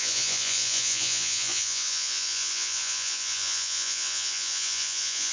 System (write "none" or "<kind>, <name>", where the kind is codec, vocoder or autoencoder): vocoder, Vocos